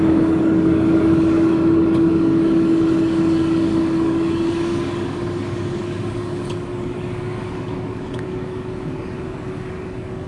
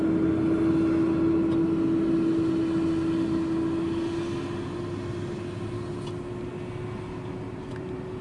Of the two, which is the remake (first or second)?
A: first